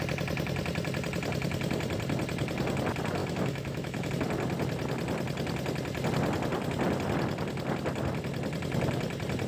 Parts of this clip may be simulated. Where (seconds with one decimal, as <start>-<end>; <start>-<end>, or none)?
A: 3.2-4.1

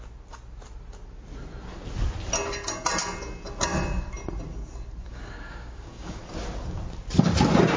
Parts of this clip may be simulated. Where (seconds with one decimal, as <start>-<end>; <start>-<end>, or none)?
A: 5.1-6.2

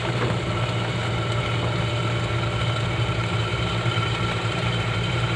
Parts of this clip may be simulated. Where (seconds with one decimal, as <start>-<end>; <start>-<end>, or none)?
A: 0.0-1.0; 3.4-5.4